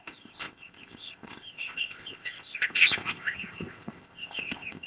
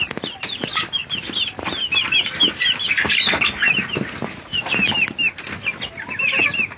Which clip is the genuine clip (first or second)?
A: second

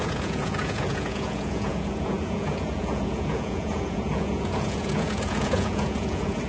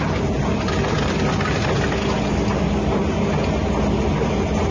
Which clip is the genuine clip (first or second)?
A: second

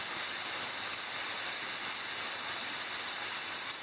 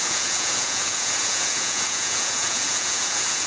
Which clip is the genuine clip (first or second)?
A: first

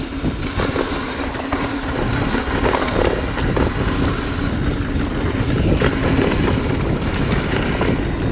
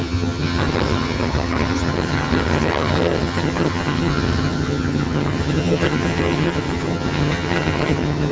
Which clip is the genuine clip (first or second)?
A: first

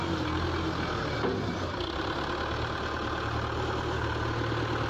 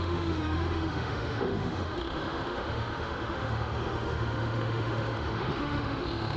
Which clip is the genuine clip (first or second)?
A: first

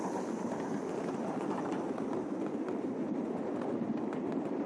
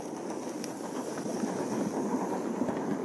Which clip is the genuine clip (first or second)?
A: second